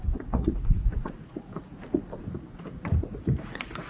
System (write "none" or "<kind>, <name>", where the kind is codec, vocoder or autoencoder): vocoder, Vocos